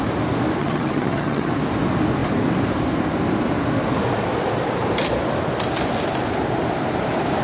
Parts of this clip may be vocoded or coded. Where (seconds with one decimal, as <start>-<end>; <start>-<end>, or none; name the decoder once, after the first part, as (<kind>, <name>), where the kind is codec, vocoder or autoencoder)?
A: 0.6-1.5 (vocoder, HiFi-GAN)